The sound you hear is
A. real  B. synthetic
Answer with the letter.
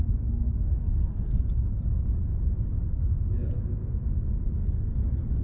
A